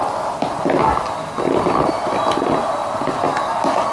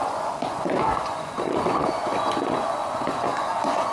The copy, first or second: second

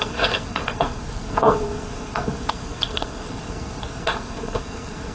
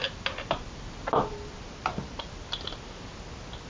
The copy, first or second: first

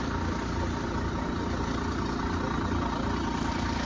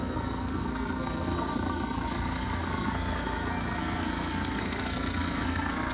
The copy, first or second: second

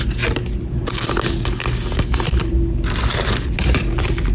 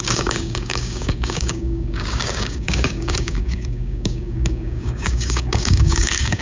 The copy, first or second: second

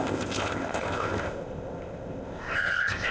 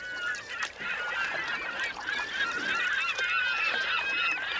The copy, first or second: first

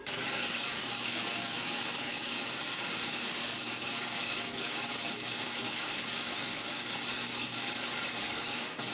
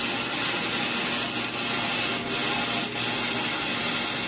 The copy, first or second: first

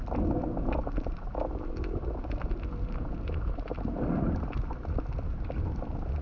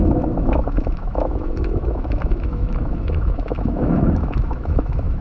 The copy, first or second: second